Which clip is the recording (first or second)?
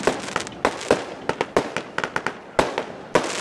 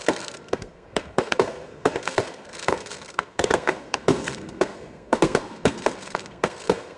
first